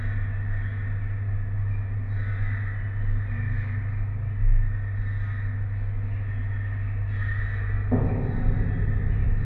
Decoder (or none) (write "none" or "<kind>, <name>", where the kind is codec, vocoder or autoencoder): none